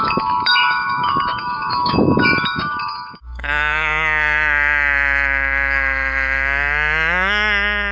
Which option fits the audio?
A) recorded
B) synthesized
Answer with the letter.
B